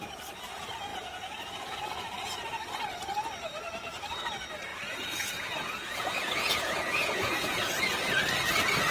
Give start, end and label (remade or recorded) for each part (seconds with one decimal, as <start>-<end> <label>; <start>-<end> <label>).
0.0-0.9 recorded; 0.9-1.8 remade; 1.8-4.7 recorded; 4.7-7.8 remade; 7.8-8.9 recorded

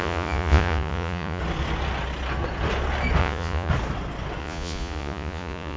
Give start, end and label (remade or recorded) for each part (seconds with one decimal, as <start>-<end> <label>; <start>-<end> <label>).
0.0-1.4 remade; 1.4-3.2 recorded; 3.2-3.7 remade; 3.7-4.4 recorded; 4.4-5.8 remade

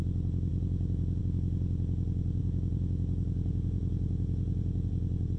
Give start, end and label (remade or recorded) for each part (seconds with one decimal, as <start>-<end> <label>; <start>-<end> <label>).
0.0-0.5 recorded; 0.5-1.2 remade; 1.2-2.4 recorded; 2.4-4.9 remade; 4.9-5.4 recorded

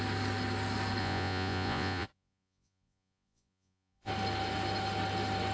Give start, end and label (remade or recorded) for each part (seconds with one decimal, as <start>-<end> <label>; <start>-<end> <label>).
0.0-1.0 recorded; 1.0-4.1 remade; 4.1-5.5 recorded

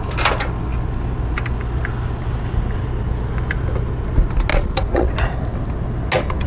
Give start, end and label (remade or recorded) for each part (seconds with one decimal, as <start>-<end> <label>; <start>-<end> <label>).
0.0-4.5 recorded; 4.5-5.1 remade; 5.1-6.5 recorded

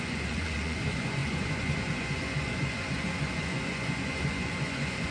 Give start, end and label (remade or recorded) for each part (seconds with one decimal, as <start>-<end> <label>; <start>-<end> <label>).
0.0-5.1 remade

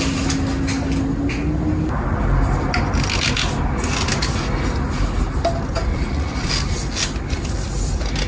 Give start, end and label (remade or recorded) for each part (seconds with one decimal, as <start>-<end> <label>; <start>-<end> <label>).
0.0-5.9 recorded; 5.9-6.5 remade; 6.5-8.3 recorded